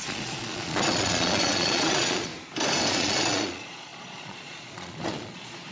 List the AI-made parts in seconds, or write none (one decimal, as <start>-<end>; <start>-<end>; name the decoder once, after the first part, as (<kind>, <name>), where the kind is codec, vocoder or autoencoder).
0.0-2.3 (vocoder, Vocos); 2.9-5.7